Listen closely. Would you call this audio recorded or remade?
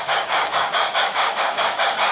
remade